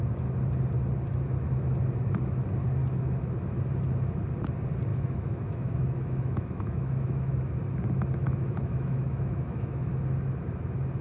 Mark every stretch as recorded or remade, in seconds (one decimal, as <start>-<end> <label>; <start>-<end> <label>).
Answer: 0.0-2.8 recorded; 2.8-3.3 remade; 3.3-4.9 recorded; 4.9-7.5 remade; 7.5-8.2 recorded; 8.2-9.9 remade; 9.9-11.0 recorded